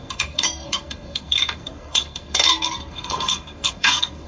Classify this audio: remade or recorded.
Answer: remade